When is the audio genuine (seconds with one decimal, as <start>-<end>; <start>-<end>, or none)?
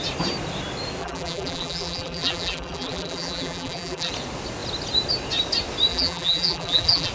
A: 0.0-1.0; 4.1-5.9